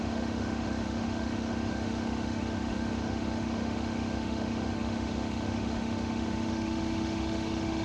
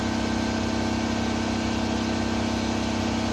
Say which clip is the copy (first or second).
first